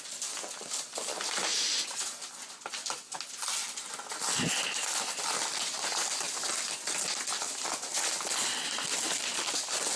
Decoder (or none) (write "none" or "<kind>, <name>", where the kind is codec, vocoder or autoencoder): none